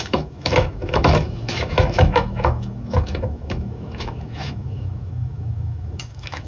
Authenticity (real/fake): fake